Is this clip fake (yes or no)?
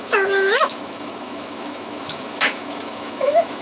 yes